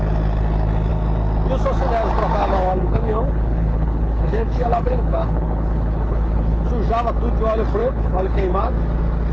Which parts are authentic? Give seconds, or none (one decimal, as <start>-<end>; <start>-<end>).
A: 0.0-2.4; 6.7-7.8; 8.7-9.3